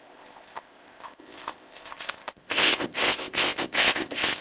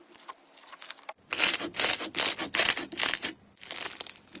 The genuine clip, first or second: second